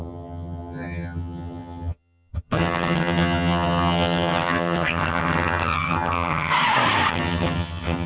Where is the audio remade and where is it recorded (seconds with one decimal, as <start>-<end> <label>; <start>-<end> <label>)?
0.0-6.5 remade; 6.5-7.1 recorded; 7.1-8.1 remade

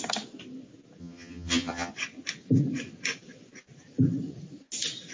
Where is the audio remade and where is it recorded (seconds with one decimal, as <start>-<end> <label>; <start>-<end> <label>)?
0.0-1.0 recorded; 1.0-1.9 remade; 1.9-5.1 recorded